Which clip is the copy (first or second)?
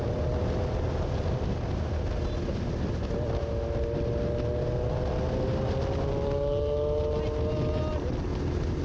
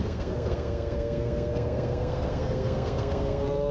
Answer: second